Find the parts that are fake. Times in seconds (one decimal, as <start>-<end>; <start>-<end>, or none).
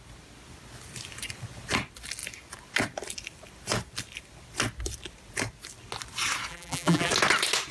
6.5-7.1